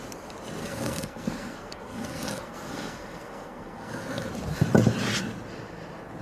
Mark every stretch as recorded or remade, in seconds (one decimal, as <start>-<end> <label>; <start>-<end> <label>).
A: 0.0-0.6 recorded; 0.6-4.3 remade; 4.3-6.2 recorded